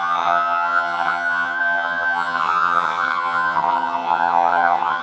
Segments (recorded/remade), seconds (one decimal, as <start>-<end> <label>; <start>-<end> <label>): 0.0-5.0 remade